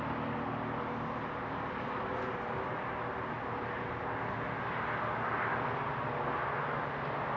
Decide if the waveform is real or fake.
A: real